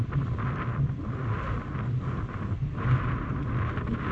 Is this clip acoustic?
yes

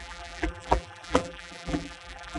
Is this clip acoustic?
no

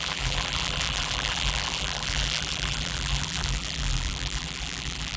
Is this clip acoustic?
no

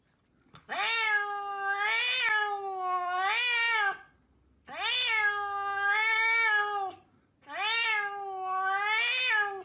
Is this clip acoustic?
yes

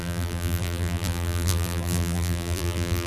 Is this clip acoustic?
no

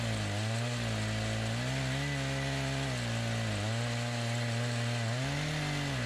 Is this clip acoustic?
yes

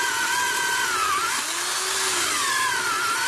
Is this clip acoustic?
yes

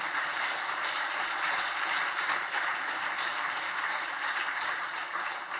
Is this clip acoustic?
no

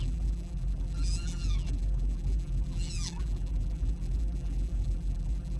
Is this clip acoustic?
no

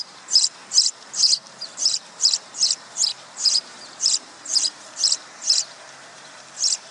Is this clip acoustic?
no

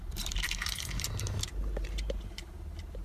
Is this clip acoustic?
no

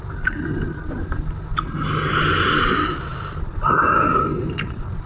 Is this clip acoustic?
no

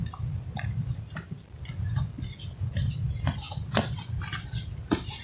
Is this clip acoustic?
yes